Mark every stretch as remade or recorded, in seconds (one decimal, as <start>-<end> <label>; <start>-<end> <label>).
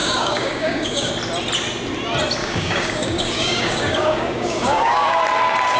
0.0-1.1 remade; 1.1-2.4 recorded; 2.4-5.2 remade; 5.2-5.8 recorded